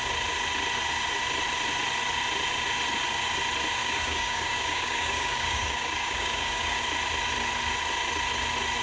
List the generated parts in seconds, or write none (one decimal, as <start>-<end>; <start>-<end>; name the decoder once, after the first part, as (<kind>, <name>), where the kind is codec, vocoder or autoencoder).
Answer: 3.8-6.8 (codec, DAC)

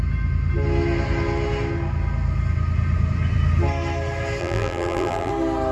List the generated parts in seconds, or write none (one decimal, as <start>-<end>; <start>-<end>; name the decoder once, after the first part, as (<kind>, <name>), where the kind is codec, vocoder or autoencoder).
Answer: 4.4-5.3 (vocoder, BigVGAN v2)